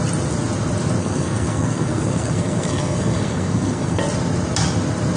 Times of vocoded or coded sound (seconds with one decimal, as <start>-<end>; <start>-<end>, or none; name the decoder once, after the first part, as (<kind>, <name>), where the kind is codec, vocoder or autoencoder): 1.0-4.0 (codec, SNAC)